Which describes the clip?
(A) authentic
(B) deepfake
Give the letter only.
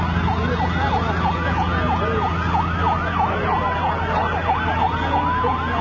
A